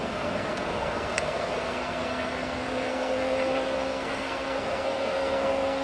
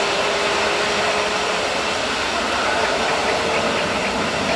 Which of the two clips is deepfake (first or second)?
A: first